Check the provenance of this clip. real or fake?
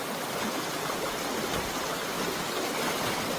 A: real